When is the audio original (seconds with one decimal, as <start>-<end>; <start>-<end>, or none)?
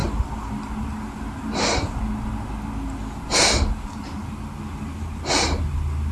0.0-6.1